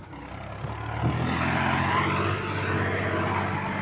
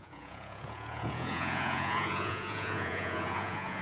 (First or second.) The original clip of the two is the first